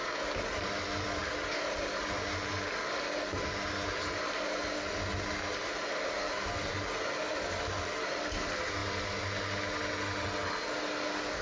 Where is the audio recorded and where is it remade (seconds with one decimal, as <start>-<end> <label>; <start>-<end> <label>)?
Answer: 0.0-11.4 recorded